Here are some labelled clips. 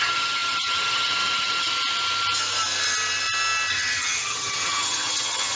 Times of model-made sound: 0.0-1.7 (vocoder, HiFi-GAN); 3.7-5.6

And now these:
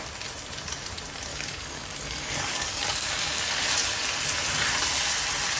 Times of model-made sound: 1.3-3.6 (codec, DAC)

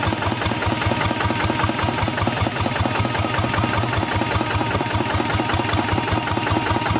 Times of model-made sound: 4.6-5.9 (vocoder, BigVGAN v2)